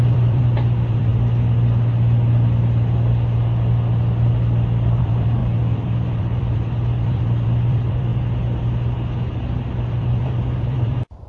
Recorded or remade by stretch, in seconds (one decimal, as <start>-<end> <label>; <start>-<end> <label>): 0.0-1.1 remade; 1.1-5.0 recorded; 5.0-8.1 remade; 8.1-9.7 recorded; 9.7-11.3 remade